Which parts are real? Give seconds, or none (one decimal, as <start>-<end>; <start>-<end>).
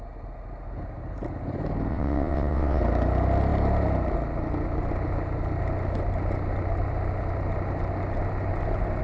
0.0-1.9; 2.8-9.0